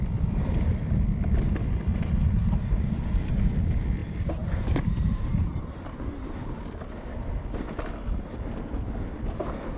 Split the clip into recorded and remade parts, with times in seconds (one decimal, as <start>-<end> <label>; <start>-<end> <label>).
0.0-2.2 recorded; 2.2-3.5 remade; 3.5-4.0 recorded; 4.0-5.2 remade; 5.2-9.8 recorded